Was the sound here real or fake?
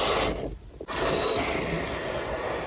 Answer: real